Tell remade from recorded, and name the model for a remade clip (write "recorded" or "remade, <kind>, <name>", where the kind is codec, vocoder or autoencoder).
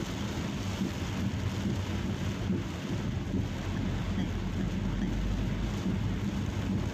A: recorded